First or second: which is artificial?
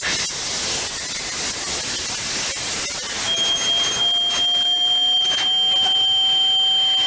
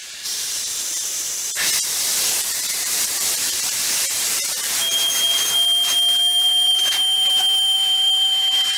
second